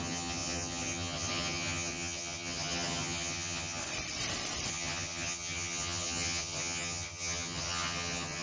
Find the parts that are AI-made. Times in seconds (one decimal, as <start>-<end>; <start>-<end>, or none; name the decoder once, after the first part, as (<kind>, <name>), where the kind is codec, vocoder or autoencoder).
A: 0.0-3.8 (vocoder, HiFi-GAN); 4.7-8.4

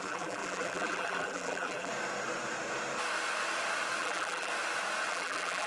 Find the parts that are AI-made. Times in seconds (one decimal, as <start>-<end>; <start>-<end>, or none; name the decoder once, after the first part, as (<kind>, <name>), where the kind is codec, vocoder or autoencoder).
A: 0.0-1.9 (vocoder, BigVGAN v2); 4.0-4.5; 5.1-5.7

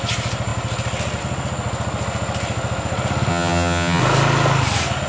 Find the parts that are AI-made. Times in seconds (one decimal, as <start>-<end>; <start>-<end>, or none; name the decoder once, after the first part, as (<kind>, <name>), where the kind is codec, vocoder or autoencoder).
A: 3.3-4.0 (vocoder, HiFi-GAN)

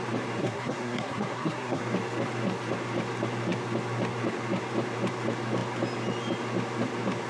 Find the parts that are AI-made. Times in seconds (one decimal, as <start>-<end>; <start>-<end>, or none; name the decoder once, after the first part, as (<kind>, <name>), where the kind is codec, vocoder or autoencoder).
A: 0.4-1.8 (codec, SNAC)

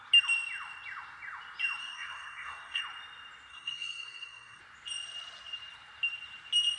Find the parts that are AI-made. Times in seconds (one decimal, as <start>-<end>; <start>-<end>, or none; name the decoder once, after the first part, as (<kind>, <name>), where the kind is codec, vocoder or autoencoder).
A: 1.8-2.8 (codec, SNAC); 3.5-4.6

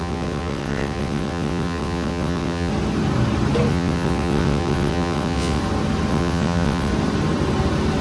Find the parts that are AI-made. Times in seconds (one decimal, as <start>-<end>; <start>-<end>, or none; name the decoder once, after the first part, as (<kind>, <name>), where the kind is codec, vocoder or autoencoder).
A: 0.0-2.7 (vocoder, WaveNeXt); 3.7-5.6; 6.1-6.9

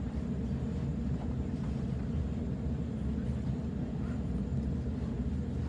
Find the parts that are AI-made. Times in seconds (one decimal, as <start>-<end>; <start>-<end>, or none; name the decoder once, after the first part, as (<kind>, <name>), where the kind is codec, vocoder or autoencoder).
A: 0.9-2.3 (vocoder, BigVGAN v2)